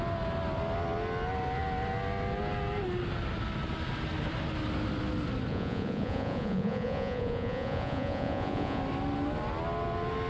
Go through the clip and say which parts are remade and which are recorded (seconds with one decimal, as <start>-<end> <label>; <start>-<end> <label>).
0.0-5.5 recorded; 5.5-8.8 remade; 8.8-10.3 recorded

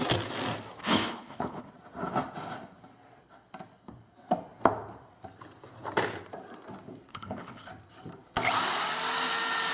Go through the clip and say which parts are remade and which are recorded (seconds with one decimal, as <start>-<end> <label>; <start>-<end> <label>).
0.0-0.8 recorded; 0.8-1.7 remade; 1.7-7.1 recorded; 7.1-7.7 remade; 7.7-9.7 recorded